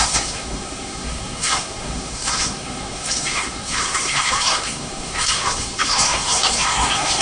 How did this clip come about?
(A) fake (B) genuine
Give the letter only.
A